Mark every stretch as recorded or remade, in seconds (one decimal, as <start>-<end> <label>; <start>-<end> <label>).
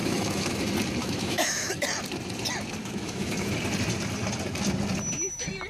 0.0-0.6 remade; 0.6-1.0 recorded; 1.0-1.7 remade; 1.7-2.8 recorded; 2.8-3.5 remade; 3.5-5.7 recorded